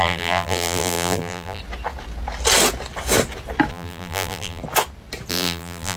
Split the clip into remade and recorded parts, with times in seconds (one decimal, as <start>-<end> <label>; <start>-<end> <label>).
0.0-1.6 remade; 1.6-3.7 recorded; 3.7-4.6 remade; 4.6-5.3 recorded; 5.3-6.0 remade